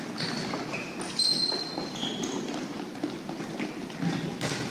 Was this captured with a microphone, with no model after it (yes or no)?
yes